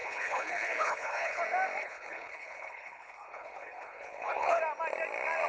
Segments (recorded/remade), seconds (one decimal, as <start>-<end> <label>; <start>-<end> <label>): 0.0-1.4 remade; 1.4-1.8 recorded; 1.8-4.6 remade; 4.6-5.5 recorded

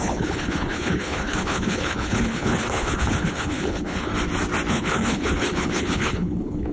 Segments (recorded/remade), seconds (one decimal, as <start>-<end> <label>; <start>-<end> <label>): 0.0-4.1 remade; 4.1-4.7 recorded; 4.7-6.7 remade

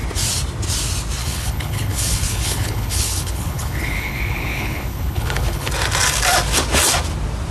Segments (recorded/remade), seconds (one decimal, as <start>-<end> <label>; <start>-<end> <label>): 0.0-1.2 recorded; 1.2-5.7 remade; 5.7-7.5 recorded

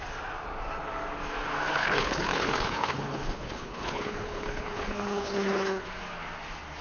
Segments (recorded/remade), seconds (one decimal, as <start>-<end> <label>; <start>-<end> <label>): 0.0-1.7 recorded; 1.7-5.8 remade; 5.8-6.8 recorded

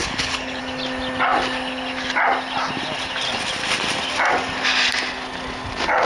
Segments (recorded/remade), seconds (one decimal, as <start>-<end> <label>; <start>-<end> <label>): 0.0-0.6 remade; 0.6-6.0 recorded

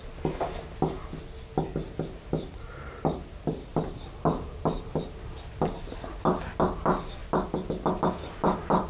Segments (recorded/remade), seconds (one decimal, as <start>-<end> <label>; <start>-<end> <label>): 0.0-8.9 recorded

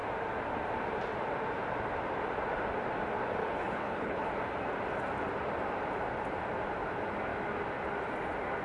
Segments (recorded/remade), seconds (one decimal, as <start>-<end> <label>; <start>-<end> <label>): 0.0-3.4 recorded; 3.4-4.3 remade; 4.3-8.6 recorded

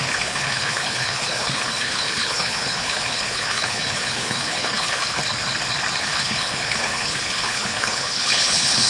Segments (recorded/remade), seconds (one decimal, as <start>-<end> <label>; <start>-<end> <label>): 0.0-5.2 remade; 5.2-6.0 recorded; 6.0-8.9 remade